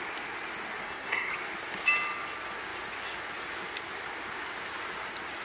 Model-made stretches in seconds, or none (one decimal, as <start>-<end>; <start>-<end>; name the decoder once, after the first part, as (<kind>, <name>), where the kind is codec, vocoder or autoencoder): 0.8-1.3 (codec, SNAC)